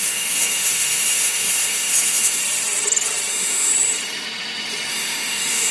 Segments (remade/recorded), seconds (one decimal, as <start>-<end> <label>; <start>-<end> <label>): 0.0-2.4 remade; 2.4-3.3 recorded; 3.3-3.7 remade; 3.7-4.9 recorded; 4.9-5.7 remade